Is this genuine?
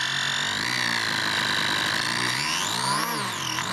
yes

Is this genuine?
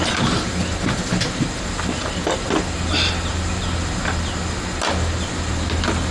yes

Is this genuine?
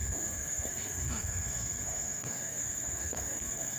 no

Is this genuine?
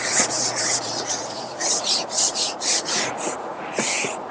no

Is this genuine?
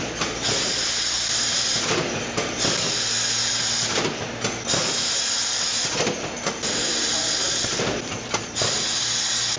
yes